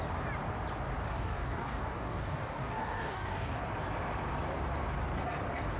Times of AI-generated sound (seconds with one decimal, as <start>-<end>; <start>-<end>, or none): 1.1-3.6